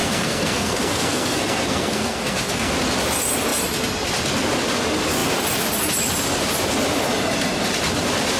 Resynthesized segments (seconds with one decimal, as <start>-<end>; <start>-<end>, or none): 0.0-2.7